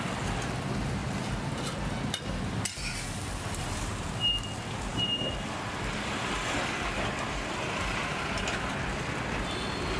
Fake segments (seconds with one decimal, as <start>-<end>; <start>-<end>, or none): none